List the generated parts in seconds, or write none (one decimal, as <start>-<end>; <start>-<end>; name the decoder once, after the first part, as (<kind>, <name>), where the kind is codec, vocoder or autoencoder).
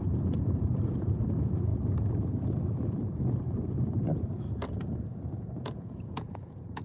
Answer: 0.0-1.7 (vocoder, Vocos); 5.3-6.8